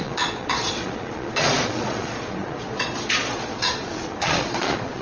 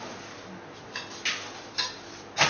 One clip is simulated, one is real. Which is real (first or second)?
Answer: second